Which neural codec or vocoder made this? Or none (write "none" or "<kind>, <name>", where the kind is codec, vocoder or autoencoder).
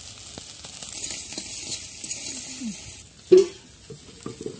none